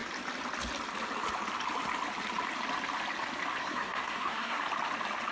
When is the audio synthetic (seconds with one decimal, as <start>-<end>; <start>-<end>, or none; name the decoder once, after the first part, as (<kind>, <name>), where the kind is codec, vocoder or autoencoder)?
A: 3.6-4.6 (codec, SNAC)